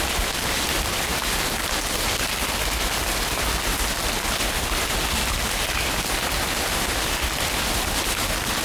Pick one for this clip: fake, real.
real